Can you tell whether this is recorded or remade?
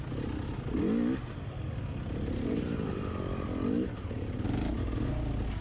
recorded